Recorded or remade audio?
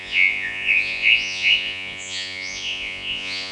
remade